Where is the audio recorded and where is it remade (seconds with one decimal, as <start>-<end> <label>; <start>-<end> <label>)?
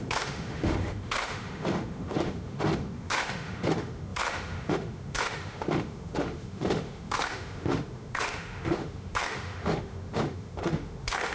0.0-11.3 remade